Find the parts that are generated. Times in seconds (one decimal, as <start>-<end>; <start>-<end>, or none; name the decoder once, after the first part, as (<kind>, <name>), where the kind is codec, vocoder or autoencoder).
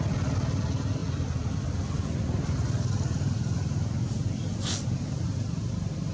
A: 1.0-4.7 (vocoder, BigVGAN v2)